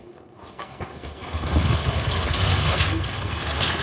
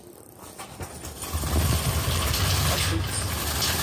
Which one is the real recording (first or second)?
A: second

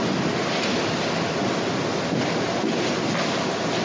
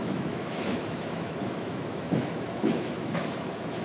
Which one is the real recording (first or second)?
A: first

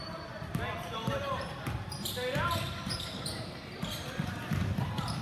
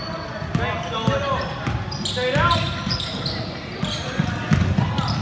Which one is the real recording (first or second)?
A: second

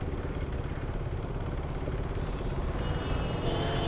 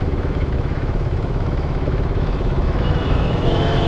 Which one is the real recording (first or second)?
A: first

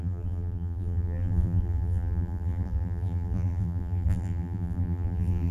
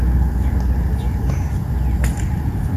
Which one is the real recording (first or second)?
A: second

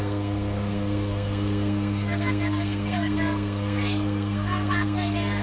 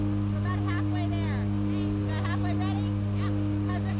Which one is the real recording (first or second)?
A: second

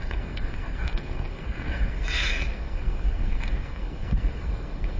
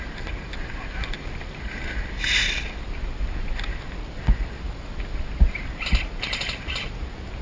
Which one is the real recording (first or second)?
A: second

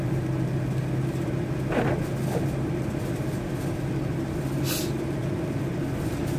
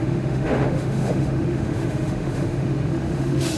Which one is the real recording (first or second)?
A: first